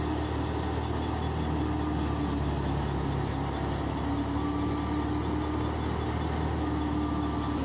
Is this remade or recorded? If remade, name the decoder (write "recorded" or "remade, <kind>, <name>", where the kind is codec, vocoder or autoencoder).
recorded